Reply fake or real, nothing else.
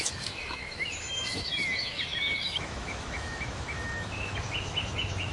fake